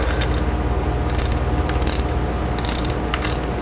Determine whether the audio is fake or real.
real